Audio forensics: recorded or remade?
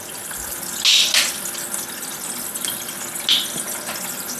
recorded